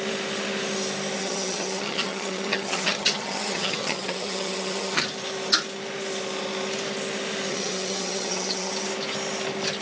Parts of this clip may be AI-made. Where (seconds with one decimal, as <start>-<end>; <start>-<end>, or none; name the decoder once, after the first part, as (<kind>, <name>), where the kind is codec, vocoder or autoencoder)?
1.2-5.0 (vocoder, HiFi-GAN); 7.5-8.7